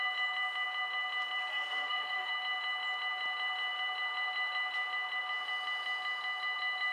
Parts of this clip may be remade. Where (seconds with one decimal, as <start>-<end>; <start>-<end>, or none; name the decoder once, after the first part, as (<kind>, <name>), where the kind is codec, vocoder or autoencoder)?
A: 1.5-2.3 (codec, SNAC)